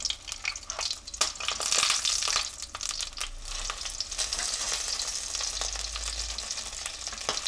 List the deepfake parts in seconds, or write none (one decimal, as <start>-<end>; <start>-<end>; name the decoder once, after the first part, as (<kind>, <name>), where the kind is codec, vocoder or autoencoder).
none